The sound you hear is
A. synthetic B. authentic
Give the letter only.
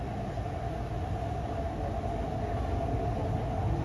B